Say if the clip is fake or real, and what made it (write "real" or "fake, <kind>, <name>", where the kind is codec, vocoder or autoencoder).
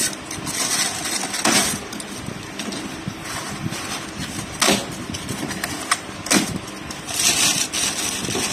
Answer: real